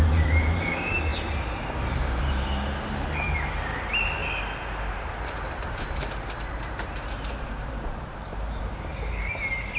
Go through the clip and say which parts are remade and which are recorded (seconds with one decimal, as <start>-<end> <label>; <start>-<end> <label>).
0.0-4.2 remade; 4.2-4.9 recorded; 4.9-9.8 remade